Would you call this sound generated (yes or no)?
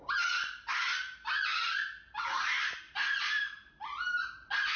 no